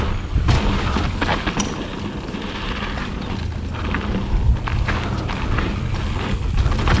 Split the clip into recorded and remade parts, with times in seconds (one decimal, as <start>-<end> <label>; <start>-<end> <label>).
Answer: 0.0-7.0 recorded